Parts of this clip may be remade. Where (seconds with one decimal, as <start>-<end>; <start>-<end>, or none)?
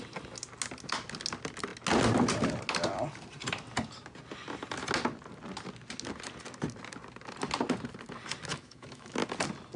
8.5-9.1